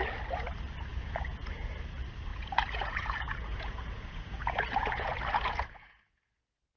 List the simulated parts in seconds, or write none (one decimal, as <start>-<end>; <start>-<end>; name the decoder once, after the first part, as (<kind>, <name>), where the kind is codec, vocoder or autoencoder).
0.9-1.7 (vocoder, Vocos); 2.3-6.8